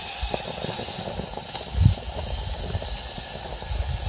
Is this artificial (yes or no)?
no